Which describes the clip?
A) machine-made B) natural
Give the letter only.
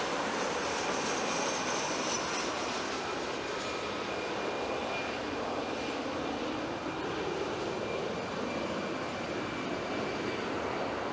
B